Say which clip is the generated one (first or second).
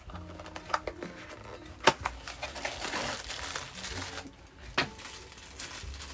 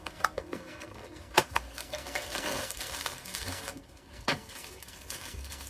second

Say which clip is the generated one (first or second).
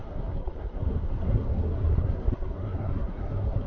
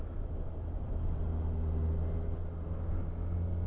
first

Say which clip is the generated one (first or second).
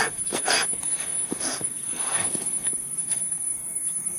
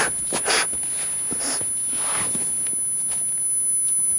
first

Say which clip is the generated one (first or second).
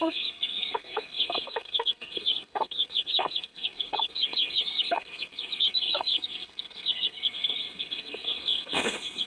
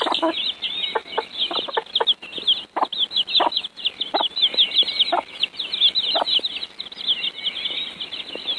first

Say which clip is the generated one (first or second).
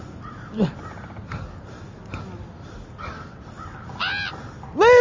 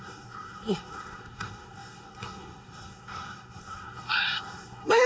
second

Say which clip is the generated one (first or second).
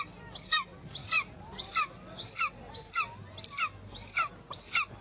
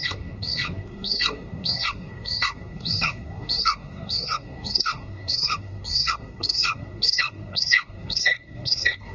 second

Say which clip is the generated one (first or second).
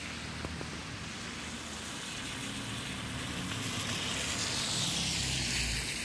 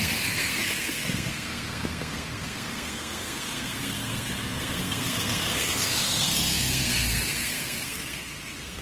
second